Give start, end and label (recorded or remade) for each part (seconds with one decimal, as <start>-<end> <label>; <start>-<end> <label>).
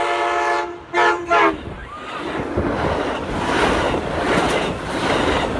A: 0.0-5.6 recorded